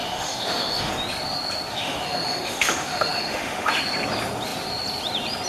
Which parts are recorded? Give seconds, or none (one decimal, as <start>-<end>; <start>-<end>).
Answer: 0.9-1.7; 3.7-5.5